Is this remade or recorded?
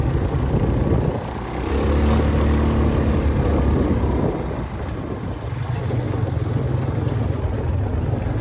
recorded